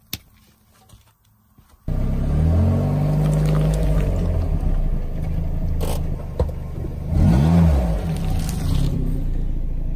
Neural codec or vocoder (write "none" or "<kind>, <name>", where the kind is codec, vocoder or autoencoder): none